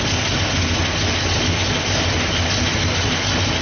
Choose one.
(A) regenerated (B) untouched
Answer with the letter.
B